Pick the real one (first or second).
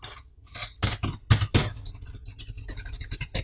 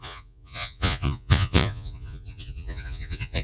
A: first